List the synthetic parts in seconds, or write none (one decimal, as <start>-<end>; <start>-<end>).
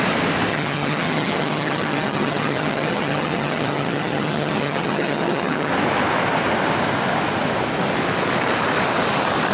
0.5-5.7